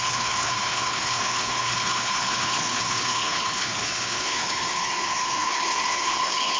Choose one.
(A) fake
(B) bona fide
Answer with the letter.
A